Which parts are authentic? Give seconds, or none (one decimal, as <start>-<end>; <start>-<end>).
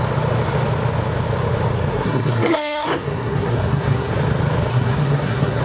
0.0-1.9; 4.1-4.7